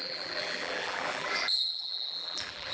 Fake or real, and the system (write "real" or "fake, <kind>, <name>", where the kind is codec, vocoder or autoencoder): fake, vocoder, BigVGAN v2